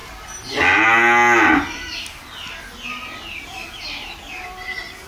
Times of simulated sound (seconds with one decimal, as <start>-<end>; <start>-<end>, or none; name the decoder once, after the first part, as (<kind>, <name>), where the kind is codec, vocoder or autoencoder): 3.1-5.1 (vocoder, BigVGAN v2)